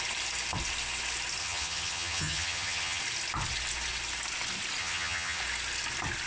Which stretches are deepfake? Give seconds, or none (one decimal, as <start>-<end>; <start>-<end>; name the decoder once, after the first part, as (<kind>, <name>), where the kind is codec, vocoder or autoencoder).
1.4-3.0 (vocoder, HiFi-GAN); 4.8-5.4